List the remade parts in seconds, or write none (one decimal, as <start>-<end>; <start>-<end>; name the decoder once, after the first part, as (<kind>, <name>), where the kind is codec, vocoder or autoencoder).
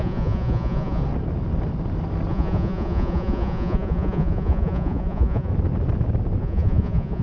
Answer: 0.0-1.0 (vocoder, Vocos); 2.3-5.5; 6.4-7.2